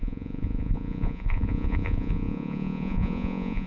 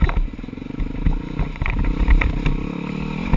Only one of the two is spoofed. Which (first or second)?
first